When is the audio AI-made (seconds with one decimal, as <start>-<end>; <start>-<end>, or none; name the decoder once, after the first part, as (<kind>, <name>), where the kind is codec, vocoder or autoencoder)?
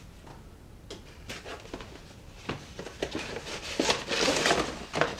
none